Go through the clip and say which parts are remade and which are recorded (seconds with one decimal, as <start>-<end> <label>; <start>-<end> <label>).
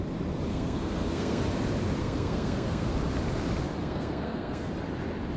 0.0-0.5 recorded; 0.5-1.4 remade; 1.4-2.0 recorded; 2.0-2.9 remade; 2.9-3.8 recorded; 3.8-4.7 remade; 4.7-5.4 recorded